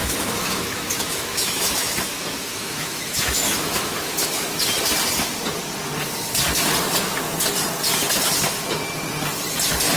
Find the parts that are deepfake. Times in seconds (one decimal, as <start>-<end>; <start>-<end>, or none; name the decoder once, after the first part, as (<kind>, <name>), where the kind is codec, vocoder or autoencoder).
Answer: 0.0-4.6 (autoencoder, DAC-VAE)